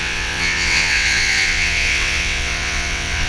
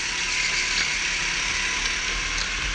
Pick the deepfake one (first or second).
first